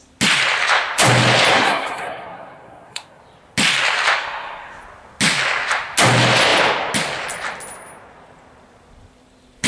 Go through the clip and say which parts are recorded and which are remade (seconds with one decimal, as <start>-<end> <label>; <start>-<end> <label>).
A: 0.0-1.5 recorded; 1.5-3.2 remade; 3.2-4.2 recorded; 4.2-4.8 remade; 4.8-9.7 recorded